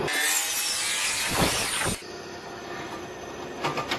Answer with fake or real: real